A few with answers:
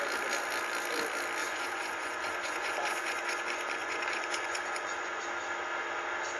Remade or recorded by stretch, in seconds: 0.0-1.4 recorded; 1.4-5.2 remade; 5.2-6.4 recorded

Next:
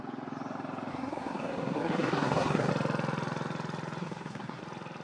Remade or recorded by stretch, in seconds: 0.0-0.9 recorded; 0.9-2.7 remade; 2.7-4.0 recorded; 4.0-4.6 remade; 4.6-5.0 recorded

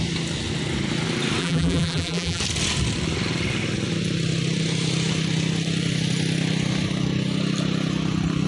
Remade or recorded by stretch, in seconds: 0.0-1.4 recorded; 1.4-2.4 remade; 2.4-8.5 recorded

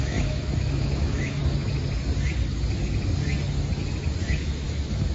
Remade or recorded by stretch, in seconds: 0.0-1.4 remade; 1.4-4.2 recorded; 4.2-5.1 remade

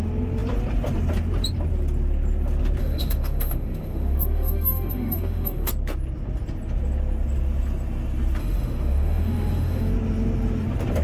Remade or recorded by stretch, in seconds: 0.0-2.8 recorded; 2.8-5.7 remade; 5.7-8.4 recorded; 8.4-9.9 remade; 9.9-11.0 recorded

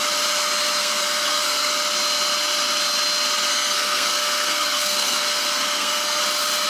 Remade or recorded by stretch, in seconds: 0.0-0.8 recorded; 0.8-1.7 remade; 1.7-3.5 recorded; 3.5-6.2 remade; 6.2-6.7 recorded

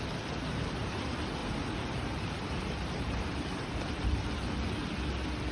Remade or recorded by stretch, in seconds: 0.0-1.4 recorded; 1.4-4.7 remade; 4.7-5.5 recorded

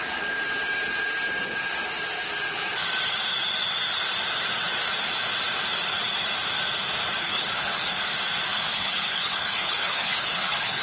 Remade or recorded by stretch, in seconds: 0.0-7.2 recorded; 7.2-8.0 remade; 8.0-8.5 recorded; 8.5-10.8 remade